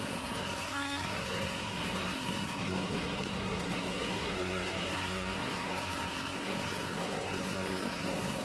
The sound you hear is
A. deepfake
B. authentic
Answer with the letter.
A